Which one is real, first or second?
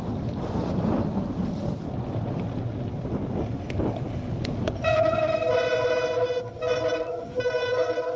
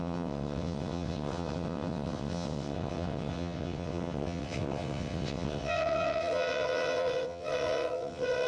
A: first